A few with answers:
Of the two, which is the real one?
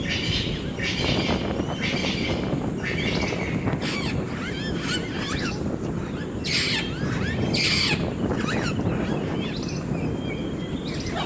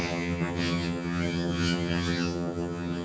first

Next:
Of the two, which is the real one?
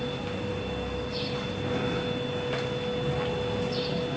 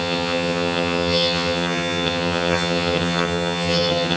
first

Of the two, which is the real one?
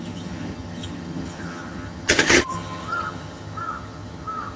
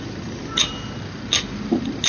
second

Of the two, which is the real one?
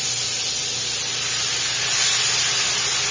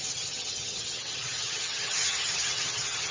first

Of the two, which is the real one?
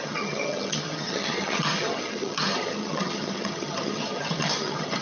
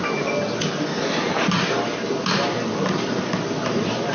second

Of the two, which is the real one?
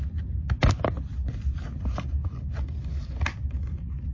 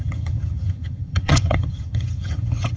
first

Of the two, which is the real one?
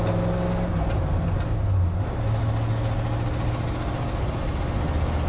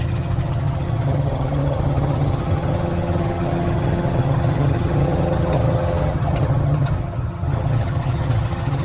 first